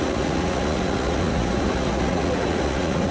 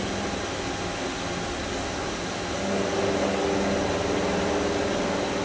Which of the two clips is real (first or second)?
second